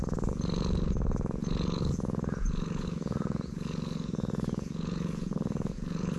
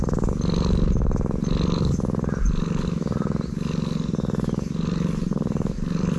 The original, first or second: second